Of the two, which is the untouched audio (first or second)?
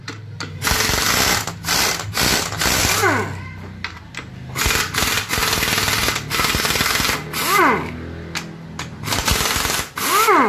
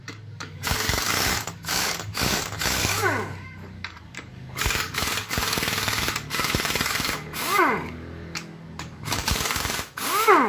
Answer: first